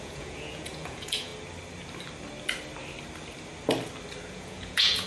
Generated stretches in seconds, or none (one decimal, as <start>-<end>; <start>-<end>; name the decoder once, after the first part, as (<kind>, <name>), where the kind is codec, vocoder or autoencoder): 0.0-1.3 (vocoder, Vocos); 4.3-5.1